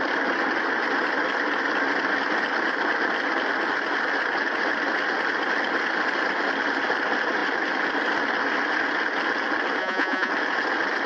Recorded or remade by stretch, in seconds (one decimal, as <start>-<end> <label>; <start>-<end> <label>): 0.0-9.8 recorded; 9.8-10.3 remade; 10.3-11.1 recorded